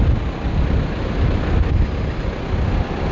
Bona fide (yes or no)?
yes